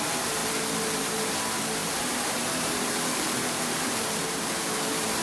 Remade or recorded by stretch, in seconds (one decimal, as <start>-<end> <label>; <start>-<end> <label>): 0.0-0.4 recorded; 0.4-1.3 remade; 1.3-1.8 recorded; 1.8-5.2 remade